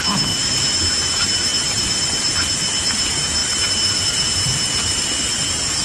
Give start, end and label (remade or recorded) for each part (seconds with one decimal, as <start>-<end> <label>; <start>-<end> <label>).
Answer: 0.0-5.8 recorded